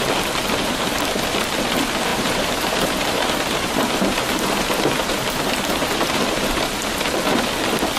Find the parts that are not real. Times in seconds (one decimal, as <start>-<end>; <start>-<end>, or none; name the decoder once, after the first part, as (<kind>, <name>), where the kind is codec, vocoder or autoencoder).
2.1-6.9 (vocoder, BigVGAN v2)